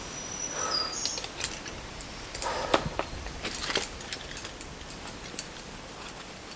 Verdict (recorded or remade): recorded